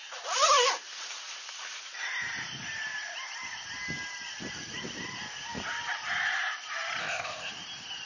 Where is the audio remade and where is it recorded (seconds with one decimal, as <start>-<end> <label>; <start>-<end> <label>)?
0.0-7.0 recorded; 7.0-7.5 remade; 7.5-8.1 recorded

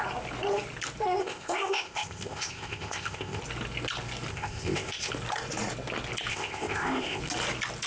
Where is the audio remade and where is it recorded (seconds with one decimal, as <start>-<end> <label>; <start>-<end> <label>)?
0.0-1.2 recorded; 1.2-3.4 remade; 3.4-4.3 recorded; 4.3-5.1 remade; 5.1-6.3 recorded; 6.3-7.2 remade; 7.2-7.9 recorded

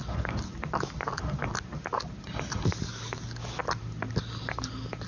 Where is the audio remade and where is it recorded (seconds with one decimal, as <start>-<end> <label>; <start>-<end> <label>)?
0.0-5.1 recorded

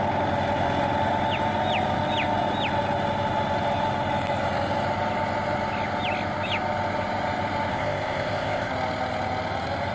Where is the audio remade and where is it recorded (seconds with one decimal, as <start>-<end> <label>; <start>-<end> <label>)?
0.0-7.7 recorded; 7.7-8.7 remade; 8.7-9.9 recorded

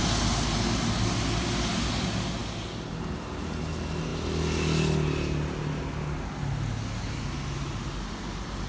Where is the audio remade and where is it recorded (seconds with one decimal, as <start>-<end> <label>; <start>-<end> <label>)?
0.0-8.7 recorded